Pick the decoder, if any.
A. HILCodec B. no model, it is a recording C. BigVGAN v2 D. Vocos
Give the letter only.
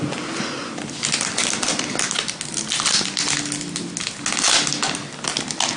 B